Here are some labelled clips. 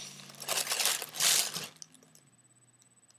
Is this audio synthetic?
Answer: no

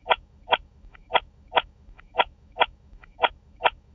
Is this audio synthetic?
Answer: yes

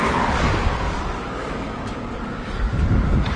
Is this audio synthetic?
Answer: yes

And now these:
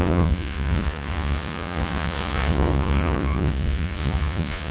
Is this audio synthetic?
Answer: yes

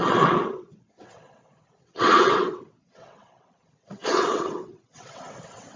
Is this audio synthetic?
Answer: yes